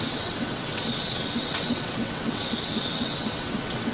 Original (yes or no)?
no